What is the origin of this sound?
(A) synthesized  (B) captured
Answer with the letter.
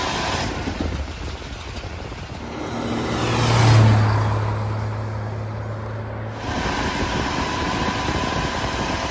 B